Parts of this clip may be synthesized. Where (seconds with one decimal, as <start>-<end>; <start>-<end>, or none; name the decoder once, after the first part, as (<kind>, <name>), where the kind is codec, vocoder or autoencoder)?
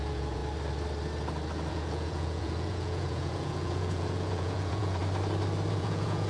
0.0-0.4 (vocoder, Vocos); 1.7-5.0; 5.7-6.3